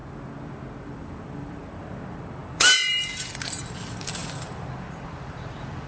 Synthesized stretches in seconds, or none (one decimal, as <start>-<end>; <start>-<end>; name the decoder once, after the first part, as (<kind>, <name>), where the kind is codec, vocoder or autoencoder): 0.8-5.9 (vocoder, BigVGAN v2)